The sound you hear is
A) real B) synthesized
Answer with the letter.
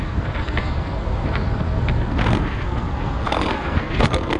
B